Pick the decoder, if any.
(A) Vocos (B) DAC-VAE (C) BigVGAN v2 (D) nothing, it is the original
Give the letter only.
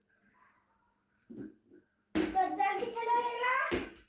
D